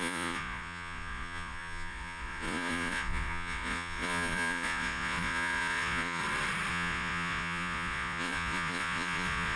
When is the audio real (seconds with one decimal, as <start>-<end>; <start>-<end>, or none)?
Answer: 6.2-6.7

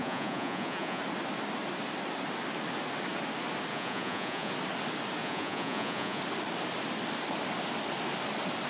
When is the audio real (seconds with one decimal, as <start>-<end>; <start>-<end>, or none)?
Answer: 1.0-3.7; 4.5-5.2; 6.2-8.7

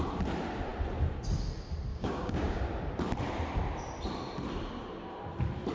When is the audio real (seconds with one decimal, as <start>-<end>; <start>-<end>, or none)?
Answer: 0.0-1.9; 2.6-5.7

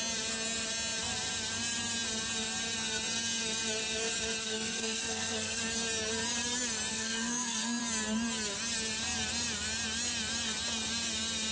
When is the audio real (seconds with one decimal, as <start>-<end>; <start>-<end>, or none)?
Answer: 0.0-4.4; 5.6-6.9; 7.8-11.5

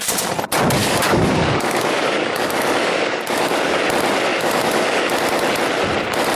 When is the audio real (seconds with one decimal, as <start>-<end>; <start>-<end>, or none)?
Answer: 0.0-0.8; 3.8-4.3; 5.1-6.4

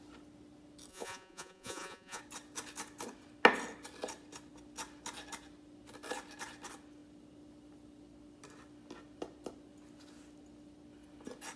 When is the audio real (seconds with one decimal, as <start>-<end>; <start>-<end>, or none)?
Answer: 0.0-0.9; 2.2-11.6

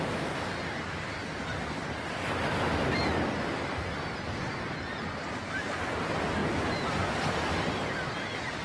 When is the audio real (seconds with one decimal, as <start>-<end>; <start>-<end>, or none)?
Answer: 0.0-8.6

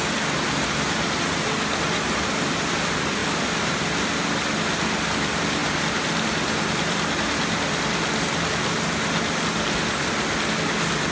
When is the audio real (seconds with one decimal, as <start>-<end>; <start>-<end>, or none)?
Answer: 0.0-3.2; 3.8-5.6; 8.1-11.1